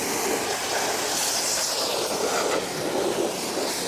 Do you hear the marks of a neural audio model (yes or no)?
no